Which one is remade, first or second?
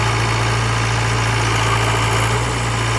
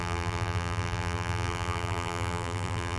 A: second